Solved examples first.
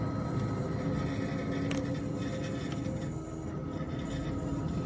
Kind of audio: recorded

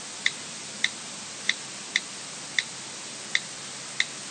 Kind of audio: recorded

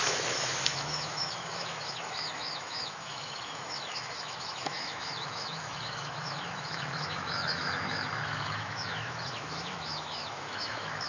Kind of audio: remade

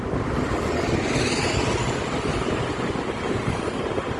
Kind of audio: recorded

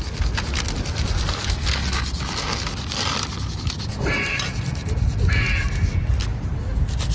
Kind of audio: recorded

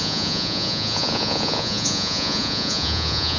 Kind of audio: remade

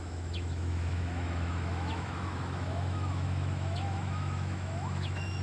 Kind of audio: remade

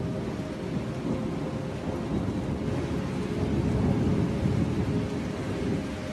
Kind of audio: recorded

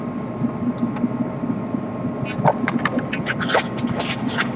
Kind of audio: recorded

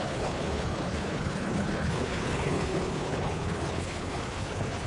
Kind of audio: remade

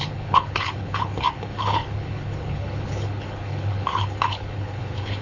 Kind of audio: remade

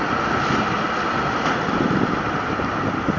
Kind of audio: recorded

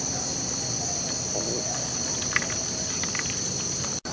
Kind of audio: recorded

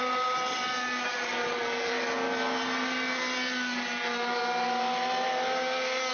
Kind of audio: recorded